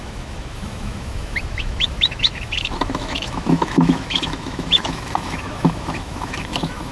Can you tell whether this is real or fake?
fake